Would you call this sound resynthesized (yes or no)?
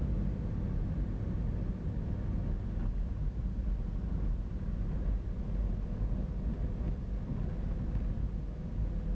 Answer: no